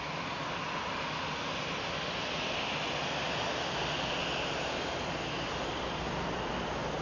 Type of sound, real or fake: real